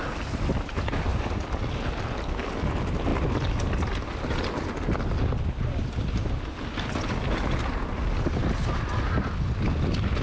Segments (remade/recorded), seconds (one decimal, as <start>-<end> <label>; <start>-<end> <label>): 0.0-10.2 recorded